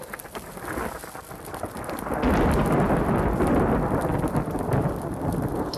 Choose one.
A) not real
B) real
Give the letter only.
B